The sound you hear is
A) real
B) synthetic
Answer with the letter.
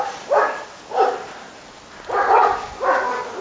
A